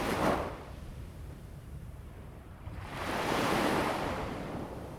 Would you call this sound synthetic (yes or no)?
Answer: yes